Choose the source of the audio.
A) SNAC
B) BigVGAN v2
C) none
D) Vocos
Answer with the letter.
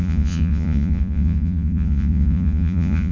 D